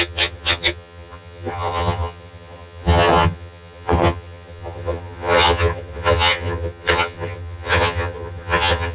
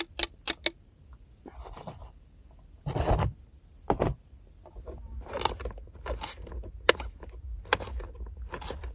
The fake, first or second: first